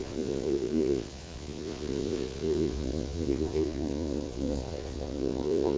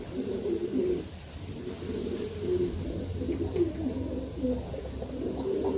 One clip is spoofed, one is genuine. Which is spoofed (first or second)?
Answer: first